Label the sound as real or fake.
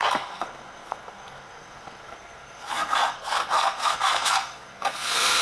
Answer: fake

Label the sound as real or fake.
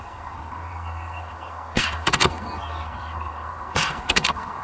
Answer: fake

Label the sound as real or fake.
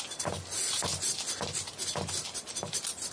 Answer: real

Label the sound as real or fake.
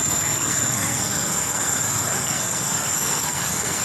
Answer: fake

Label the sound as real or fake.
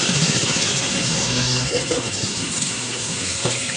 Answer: fake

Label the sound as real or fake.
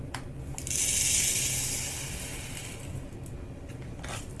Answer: real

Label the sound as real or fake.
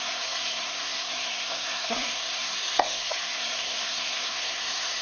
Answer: fake